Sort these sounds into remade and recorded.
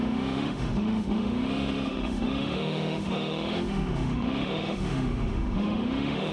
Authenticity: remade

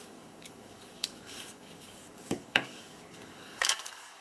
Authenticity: remade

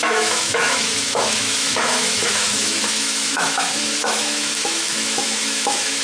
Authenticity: remade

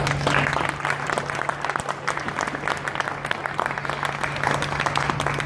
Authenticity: recorded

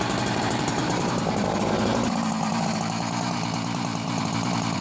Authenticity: remade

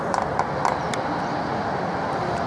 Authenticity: recorded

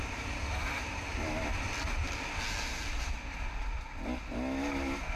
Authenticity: recorded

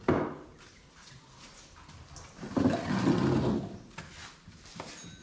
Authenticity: recorded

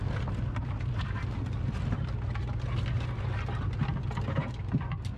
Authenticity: recorded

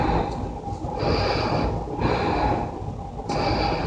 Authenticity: recorded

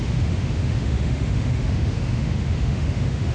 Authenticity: remade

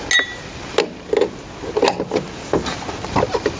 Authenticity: recorded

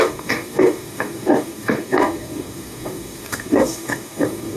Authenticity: remade